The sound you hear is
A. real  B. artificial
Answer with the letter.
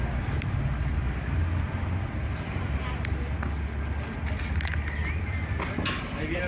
A